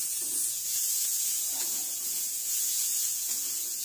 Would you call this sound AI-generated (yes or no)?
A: yes